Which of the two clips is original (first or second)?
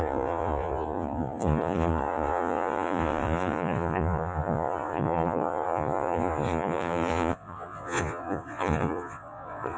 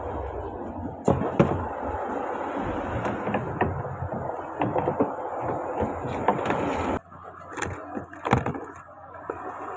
second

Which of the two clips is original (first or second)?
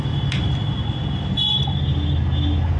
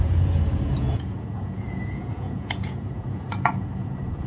first